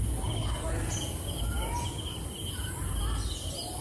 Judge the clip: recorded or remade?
recorded